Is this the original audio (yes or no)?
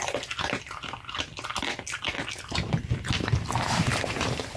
yes